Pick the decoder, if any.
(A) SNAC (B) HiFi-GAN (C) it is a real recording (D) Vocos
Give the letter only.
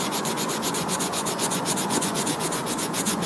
D